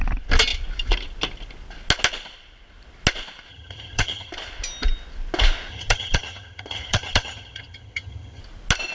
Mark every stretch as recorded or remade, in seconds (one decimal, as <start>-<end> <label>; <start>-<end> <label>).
0.0-3.5 recorded; 3.5-4.3 remade; 4.3-5.7 recorded; 5.7-8.4 remade; 8.4-8.9 recorded